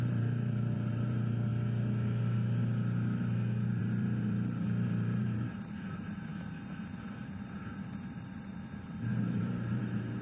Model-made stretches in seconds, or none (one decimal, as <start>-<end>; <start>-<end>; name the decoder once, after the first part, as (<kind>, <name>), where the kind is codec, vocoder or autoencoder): 0.0-1.5 (vocoder, BigVGAN v2); 3.8-6.3; 7.2-8.5; 9.1-10.2